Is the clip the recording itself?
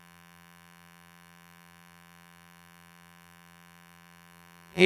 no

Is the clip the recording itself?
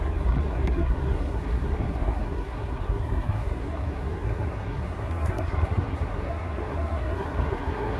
no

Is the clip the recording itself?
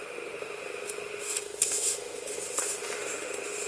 no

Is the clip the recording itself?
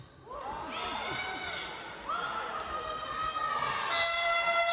yes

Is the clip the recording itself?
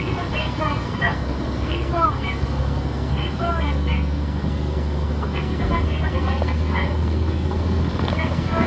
no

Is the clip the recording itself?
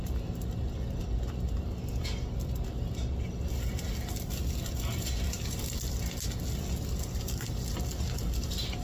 yes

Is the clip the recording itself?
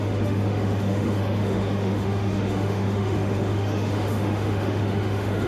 no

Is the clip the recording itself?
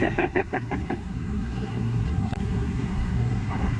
no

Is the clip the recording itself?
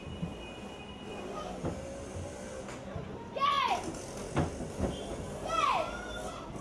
yes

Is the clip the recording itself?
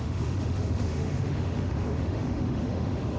no